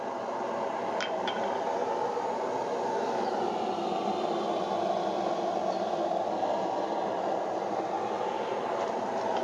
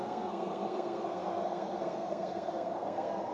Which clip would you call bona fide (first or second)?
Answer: first